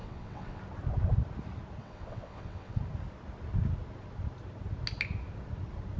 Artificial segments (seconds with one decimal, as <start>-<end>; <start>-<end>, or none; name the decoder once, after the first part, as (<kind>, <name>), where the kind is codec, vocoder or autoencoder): 0.0-0.6 (vocoder, WaveNeXt); 1.8-2.8